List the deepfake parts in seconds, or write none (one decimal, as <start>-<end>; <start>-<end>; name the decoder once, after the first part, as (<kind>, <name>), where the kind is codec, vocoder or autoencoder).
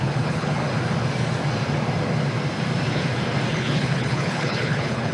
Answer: 0.0-0.6 (codec, HILCodec); 3.5-5.1